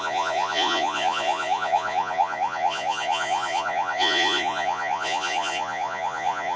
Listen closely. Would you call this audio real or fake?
fake